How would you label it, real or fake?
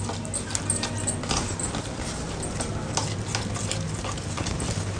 real